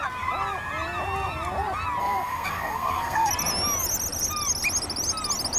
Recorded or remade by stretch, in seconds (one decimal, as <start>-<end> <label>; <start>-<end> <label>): 0.0-2.0 recorded; 2.0-3.3 remade; 3.3-5.6 recorded